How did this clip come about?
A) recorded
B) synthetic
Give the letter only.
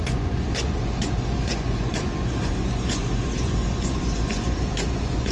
B